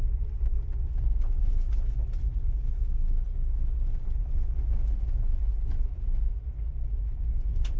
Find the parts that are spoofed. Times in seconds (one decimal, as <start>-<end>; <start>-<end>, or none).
none